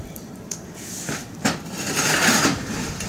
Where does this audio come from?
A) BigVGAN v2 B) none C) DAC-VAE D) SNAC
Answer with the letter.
A